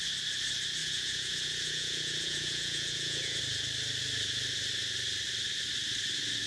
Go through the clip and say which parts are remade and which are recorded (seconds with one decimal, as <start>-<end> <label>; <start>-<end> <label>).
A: 0.0-0.8 recorded; 0.8-3.4 remade; 3.4-6.5 recorded